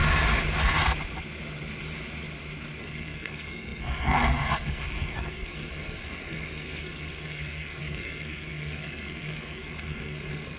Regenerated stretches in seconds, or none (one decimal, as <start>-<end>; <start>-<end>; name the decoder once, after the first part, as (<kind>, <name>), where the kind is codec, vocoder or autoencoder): 2.8-10.6 (codec, SNAC)